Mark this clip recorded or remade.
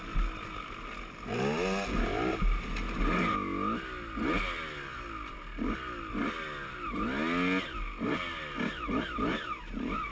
recorded